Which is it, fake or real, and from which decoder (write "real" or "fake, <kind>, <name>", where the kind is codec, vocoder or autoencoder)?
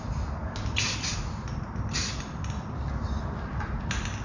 real